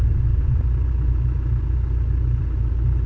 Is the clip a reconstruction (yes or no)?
no